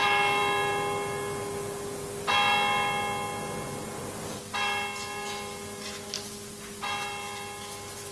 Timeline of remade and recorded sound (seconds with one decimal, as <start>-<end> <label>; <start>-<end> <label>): 0.0-8.1 recorded